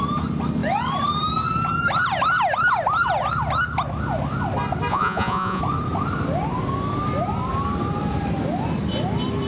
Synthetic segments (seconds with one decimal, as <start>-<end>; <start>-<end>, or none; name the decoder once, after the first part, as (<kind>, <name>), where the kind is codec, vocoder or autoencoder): 4.9-5.6 (vocoder, Vocos)